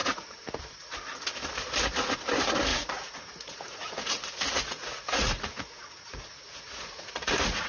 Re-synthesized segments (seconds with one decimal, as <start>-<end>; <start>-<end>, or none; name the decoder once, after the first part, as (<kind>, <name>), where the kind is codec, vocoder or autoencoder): 0.0-0.6 (vocoder, Vocos); 2.7-7.3